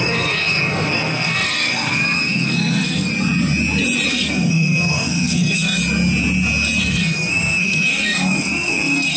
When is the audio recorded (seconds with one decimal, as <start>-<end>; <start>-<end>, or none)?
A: 3.1-4.1; 5.8-6.8